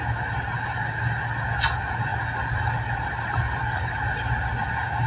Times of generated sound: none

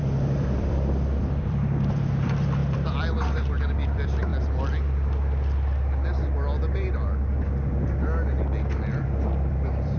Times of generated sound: 0.0-4.3 (vocoder, BigVGAN v2); 9.5-10.0

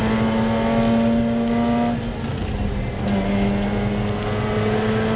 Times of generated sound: none